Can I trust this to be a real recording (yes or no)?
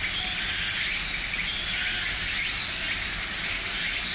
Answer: yes